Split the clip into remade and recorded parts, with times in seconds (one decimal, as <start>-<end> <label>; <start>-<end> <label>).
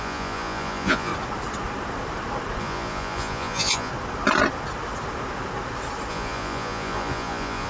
0.0-1.1 remade; 1.1-2.6 recorded; 2.6-3.9 remade; 3.9-6.1 recorded; 6.1-7.7 remade